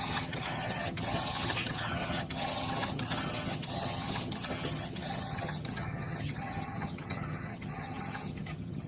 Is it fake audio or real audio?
fake